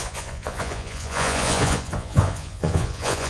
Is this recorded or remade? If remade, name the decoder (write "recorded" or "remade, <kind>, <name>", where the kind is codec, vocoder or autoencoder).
remade, vocoder, Vocos